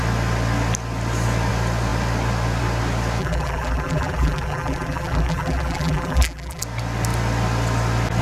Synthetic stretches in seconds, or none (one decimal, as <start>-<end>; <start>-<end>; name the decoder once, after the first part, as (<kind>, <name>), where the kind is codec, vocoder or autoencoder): 3.2-6.6 (vocoder, BigVGAN v2)